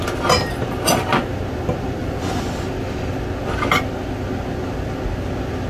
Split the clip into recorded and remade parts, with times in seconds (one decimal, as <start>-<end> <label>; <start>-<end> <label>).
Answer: 0.0-5.7 recorded